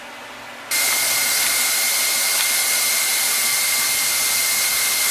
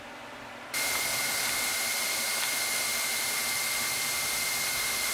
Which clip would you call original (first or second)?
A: first